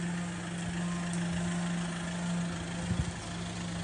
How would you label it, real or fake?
real